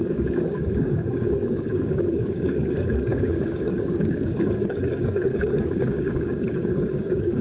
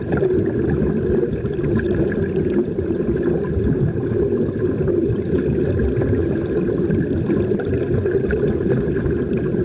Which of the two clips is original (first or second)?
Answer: second